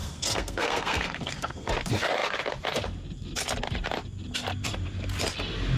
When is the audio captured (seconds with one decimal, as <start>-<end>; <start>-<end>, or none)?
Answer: 1.7-5.8